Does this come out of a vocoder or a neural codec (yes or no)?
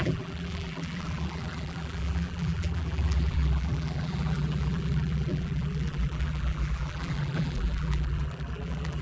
yes